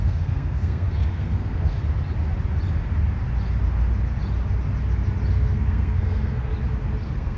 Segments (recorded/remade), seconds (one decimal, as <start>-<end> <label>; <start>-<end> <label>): 0.0-1.8 remade; 1.8-5.3 recorded; 5.3-6.5 remade; 6.5-7.0 recorded; 7.0-7.4 remade